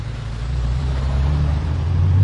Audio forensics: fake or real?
fake